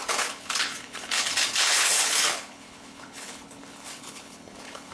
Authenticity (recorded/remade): remade